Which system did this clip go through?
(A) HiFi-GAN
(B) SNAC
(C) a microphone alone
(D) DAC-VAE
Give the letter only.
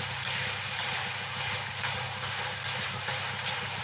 C